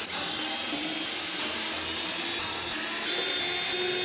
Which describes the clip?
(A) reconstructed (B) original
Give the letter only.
B